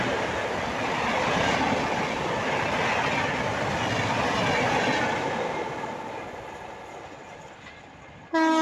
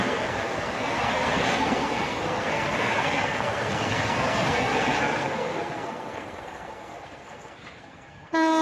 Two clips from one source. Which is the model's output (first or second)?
second